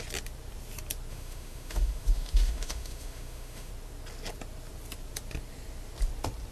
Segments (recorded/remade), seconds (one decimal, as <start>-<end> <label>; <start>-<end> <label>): 0.0-1.1 recorded; 1.1-3.7 remade; 3.7-6.5 recorded